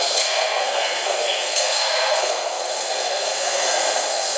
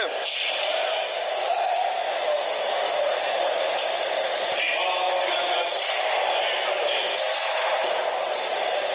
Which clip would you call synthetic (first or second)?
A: first